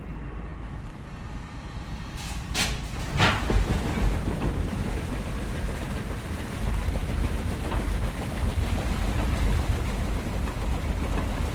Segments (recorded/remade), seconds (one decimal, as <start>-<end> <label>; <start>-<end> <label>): 0.0-11.5 recorded